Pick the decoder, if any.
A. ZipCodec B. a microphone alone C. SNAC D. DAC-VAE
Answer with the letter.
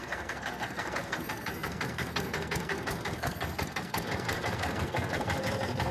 C